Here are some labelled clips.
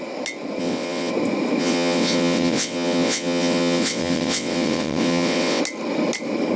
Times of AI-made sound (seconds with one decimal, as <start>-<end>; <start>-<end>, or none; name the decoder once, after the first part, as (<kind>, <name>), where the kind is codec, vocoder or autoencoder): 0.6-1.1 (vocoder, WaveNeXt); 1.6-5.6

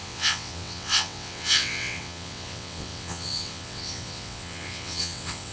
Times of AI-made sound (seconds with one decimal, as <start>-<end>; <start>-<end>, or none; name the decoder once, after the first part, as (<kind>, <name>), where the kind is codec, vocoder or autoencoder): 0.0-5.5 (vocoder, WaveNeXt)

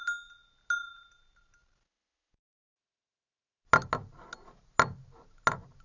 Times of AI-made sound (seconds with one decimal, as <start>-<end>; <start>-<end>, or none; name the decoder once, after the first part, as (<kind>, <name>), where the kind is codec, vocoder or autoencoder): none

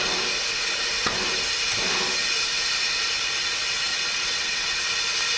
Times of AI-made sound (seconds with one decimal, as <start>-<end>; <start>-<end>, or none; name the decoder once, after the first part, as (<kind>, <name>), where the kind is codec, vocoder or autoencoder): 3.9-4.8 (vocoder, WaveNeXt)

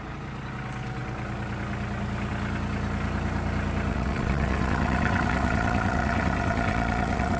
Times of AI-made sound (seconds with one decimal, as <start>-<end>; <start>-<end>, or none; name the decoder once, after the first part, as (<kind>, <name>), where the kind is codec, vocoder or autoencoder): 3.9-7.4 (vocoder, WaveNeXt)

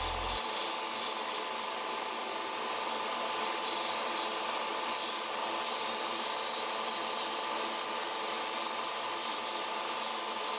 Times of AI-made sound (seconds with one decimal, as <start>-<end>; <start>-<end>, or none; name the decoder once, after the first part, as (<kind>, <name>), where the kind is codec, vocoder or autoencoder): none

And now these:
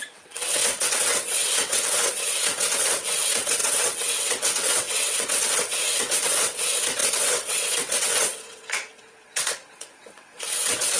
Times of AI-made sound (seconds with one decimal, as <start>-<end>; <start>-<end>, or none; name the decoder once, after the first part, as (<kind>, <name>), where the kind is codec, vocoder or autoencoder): 0.0-11.0 (vocoder, WaveNeXt)